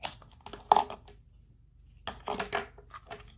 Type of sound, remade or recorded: recorded